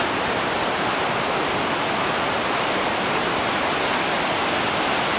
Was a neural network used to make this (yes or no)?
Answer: no